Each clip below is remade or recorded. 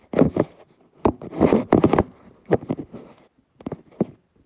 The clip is recorded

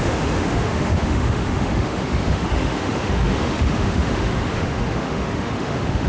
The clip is remade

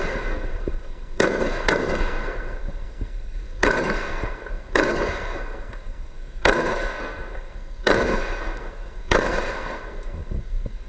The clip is remade